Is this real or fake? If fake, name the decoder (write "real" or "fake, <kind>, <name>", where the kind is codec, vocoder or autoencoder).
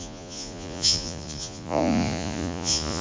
fake, vocoder, Vocos